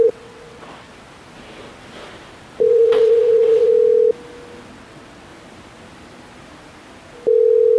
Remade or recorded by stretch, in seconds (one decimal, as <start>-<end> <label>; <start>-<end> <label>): 0.0-0.9 remade; 0.9-2.7 recorded; 2.7-3.7 remade; 3.7-4.7 recorded; 4.7-5.3 remade; 5.3-7.8 recorded